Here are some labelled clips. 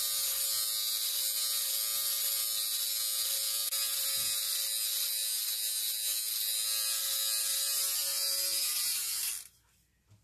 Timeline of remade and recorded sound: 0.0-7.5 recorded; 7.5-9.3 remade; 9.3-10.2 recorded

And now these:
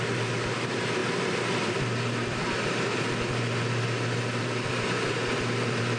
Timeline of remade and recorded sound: 0.0-6.0 remade

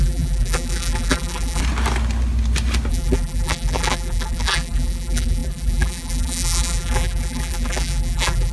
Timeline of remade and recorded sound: 0.0-1.6 remade; 1.6-2.9 recorded; 2.9-8.5 remade